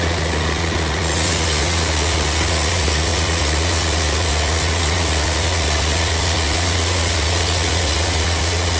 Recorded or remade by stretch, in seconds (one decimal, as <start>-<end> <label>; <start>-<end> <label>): 0.0-8.8 remade